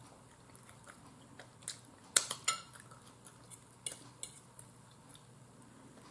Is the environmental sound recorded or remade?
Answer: recorded